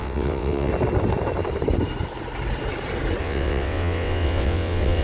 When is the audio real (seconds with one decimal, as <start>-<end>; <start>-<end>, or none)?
0.7-3.2